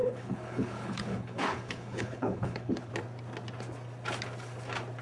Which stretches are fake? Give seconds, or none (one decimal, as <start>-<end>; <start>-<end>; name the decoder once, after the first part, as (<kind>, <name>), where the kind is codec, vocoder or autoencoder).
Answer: 0.0-2.9 (codec, HILCodec)